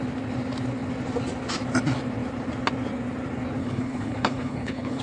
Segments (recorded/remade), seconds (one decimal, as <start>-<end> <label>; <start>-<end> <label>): 0.0-3.6 recorded; 3.6-5.0 remade